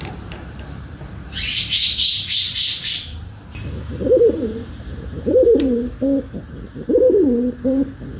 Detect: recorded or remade remade